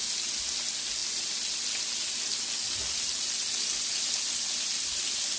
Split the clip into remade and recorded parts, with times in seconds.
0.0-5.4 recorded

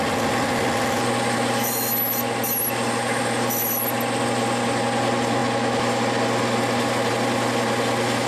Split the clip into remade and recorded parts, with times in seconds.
0.0-8.3 recorded

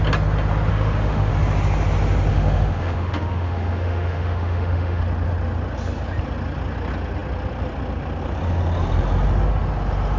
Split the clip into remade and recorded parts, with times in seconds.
0.0-0.7 recorded; 0.7-1.3 remade; 1.3-2.3 recorded; 2.3-5.0 remade; 5.0-10.2 recorded

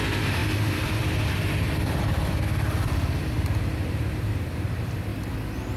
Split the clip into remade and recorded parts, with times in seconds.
0.0-5.1 remade; 5.1-5.8 recorded

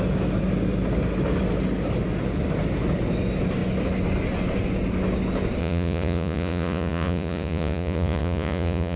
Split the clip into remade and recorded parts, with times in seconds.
0.0-5.6 recorded; 5.6-9.0 remade

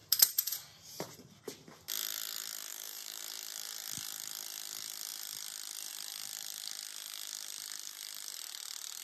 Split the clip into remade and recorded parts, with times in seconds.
0.0-1.4 remade; 1.4-2.7 recorded; 2.7-3.2 remade; 3.2-9.0 recorded

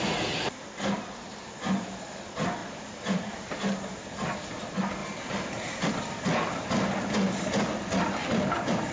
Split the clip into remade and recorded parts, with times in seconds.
0.0-2.6 recorded; 2.6-3.6 remade; 3.6-5.0 recorded; 5.0-5.9 remade; 5.9-8.2 recorded; 8.2-8.9 remade